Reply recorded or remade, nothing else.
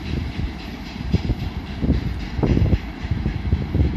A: remade